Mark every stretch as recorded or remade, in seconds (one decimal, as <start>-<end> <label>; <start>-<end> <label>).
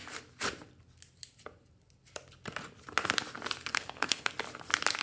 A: 0.0-3.7 recorded; 3.7-4.3 remade; 4.3-5.0 recorded